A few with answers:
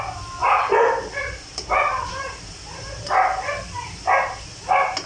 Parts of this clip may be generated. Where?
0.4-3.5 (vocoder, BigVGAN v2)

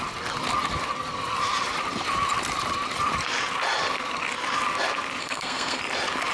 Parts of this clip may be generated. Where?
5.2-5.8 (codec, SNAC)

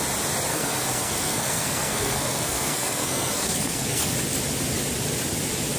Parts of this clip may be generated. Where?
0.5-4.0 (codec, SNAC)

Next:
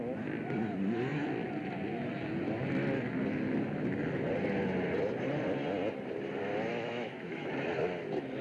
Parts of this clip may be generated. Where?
6.7-7.5 (autoencoder, DAC-VAE)